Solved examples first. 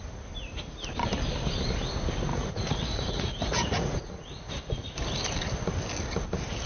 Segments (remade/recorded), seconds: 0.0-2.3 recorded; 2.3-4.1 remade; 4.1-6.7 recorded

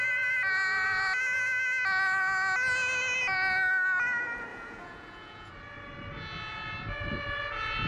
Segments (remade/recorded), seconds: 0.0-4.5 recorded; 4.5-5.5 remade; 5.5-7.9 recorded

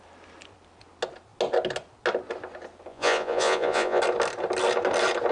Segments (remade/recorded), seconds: 0.0-2.9 recorded; 2.9-4.0 remade; 4.0-5.3 recorded

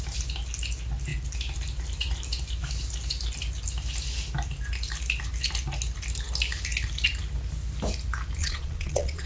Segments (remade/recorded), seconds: 0.0-8.4 recorded; 8.4-9.3 remade

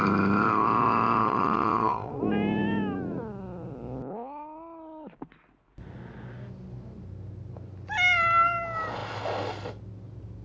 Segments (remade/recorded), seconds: 0.0-1.2 recorded; 1.2-2.2 remade; 2.2-10.4 recorded

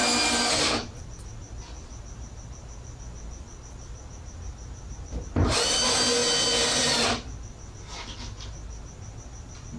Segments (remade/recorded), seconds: 0.0-9.8 recorded

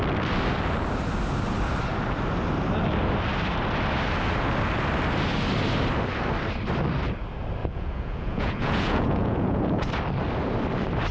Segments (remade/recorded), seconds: 0.0-7.6 recorded; 7.6-9.9 remade; 9.9-11.1 recorded

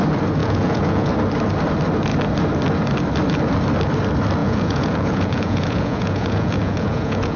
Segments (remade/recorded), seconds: 0.0-0.4 recorded; 0.4-1.1 remade; 1.1-4.4 recorded; 4.4-7.4 remade